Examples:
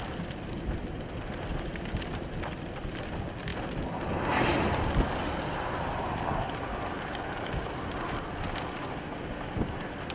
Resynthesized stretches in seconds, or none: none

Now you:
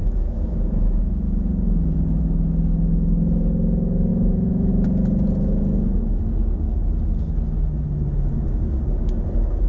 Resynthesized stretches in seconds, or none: 0.0-1.0 (autoencoder, DAC-VAE); 4.1-4.7